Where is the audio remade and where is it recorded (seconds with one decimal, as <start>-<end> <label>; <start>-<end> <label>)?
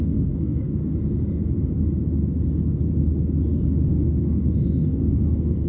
0.0-0.8 remade; 0.8-4.2 recorded; 4.2-5.7 remade